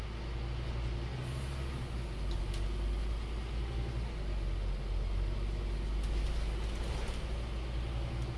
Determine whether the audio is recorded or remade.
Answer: recorded